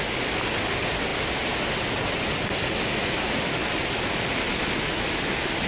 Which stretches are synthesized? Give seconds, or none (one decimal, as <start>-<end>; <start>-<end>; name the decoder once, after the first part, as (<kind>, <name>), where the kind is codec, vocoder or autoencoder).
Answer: none